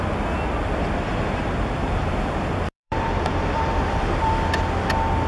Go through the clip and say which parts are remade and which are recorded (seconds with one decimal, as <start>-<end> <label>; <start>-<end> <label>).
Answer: 0.0-1.1 recorded; 1.1-4.3 remade; 4.3-5.3 recorded